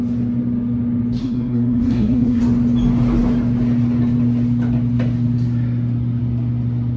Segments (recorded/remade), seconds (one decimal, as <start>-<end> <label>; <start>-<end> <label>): 0.0-1.2 recorded; 1.2-2.4 remade; 2.4-7.0 recorded